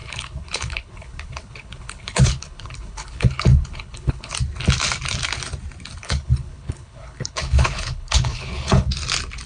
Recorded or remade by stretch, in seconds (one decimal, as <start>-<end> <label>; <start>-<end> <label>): 0.0-4.3 remade; 4.3-6.0 recorded; 6.0-8.9 remade; 8.9-9.5 recorded